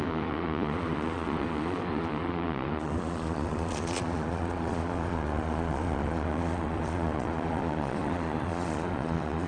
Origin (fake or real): fake